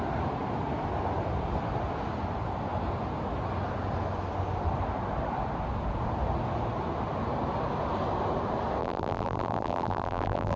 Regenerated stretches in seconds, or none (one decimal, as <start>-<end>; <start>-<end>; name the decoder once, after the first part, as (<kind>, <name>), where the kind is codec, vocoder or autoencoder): 8.8-10.6 (vocoder, BigVGAN v2)